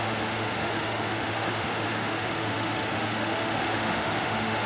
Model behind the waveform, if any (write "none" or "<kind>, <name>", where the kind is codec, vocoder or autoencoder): autoencoder, DAC-VAE